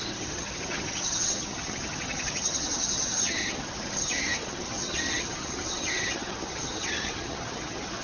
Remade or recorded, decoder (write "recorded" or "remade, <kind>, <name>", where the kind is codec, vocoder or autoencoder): remade, vocoder, HiFi-GAN